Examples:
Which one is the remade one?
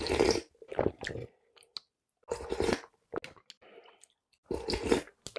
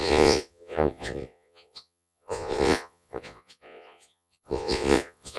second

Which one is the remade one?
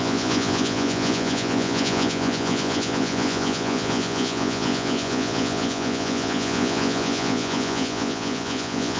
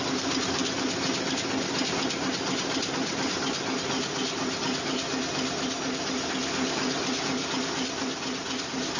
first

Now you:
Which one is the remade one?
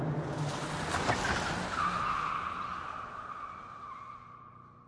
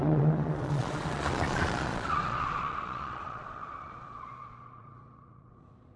second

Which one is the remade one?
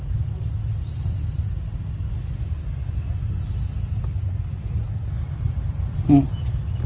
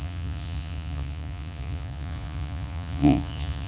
second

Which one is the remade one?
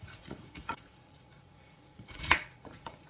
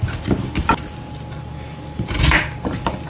first